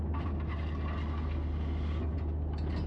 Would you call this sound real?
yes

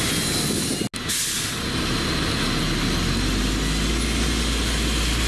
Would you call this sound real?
yes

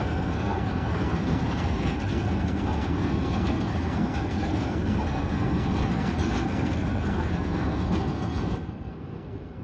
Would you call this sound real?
no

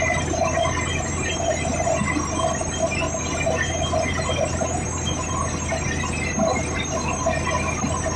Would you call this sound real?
yes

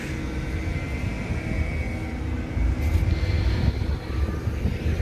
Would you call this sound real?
yes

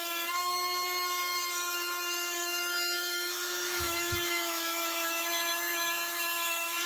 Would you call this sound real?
no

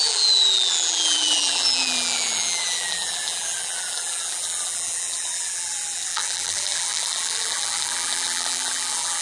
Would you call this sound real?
no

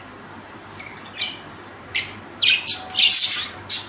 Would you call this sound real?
yes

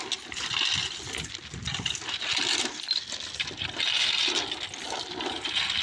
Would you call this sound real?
yes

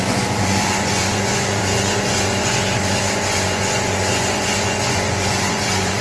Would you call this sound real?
no